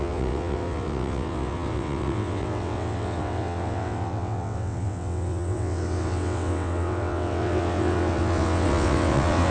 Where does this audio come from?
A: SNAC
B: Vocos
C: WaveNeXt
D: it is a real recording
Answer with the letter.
C